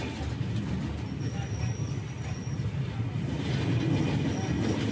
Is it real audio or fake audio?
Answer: real